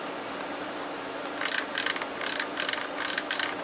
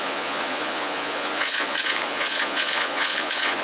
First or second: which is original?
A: first